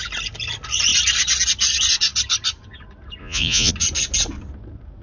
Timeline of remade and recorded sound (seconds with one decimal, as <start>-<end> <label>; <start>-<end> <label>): 0.0-3.2 recorded; 3.2-3.7 remade; 3.7-5.0 recorded